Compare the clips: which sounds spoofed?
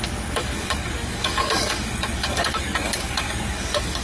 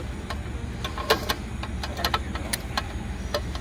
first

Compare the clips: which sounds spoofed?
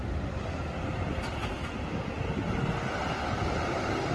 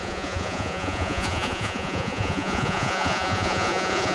second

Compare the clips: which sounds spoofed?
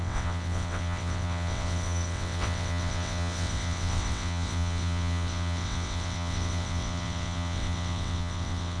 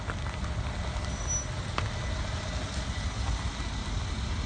first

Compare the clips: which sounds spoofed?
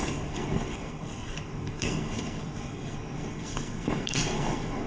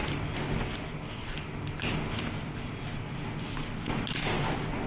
first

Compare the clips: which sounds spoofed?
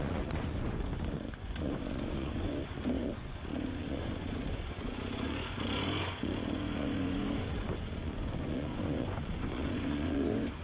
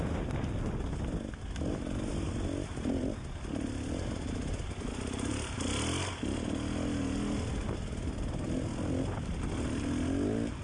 first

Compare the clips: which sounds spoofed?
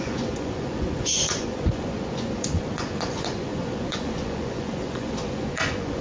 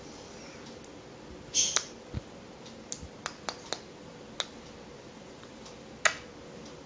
first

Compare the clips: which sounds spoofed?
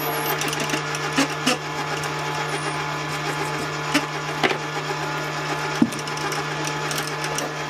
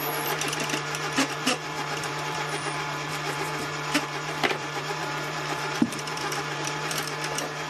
second